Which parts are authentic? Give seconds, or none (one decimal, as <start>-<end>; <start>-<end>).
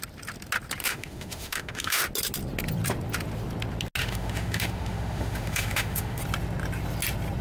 0.0-0.8; 2.0-4.0; 6.2-7.4